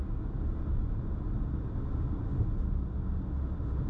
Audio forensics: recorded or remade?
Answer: recorded